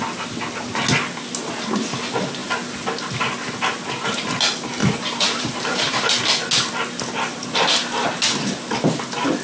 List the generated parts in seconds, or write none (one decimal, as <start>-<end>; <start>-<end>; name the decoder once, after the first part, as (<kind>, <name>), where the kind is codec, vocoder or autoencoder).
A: 4.8-6.1 (vocoder, BigVGAN v2)